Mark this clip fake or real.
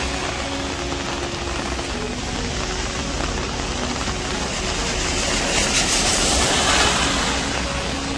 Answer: real